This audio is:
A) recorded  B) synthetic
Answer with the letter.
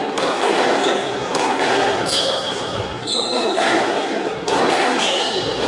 B